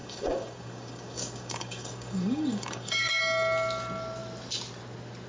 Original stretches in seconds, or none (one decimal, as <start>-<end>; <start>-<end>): 3.2-5.3